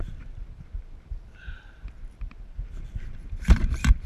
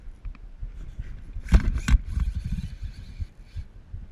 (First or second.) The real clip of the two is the second